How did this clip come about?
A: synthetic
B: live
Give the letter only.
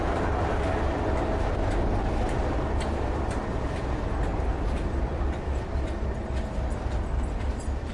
B